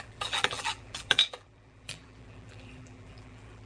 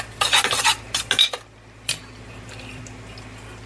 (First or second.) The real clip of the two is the second